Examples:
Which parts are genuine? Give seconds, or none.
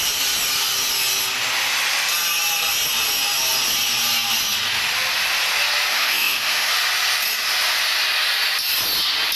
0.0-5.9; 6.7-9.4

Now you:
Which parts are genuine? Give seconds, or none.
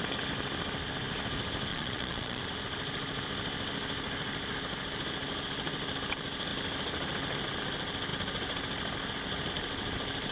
0.0-1.7; 2.4-10.3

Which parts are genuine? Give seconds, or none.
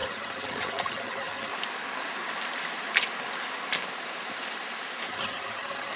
1.5-5.1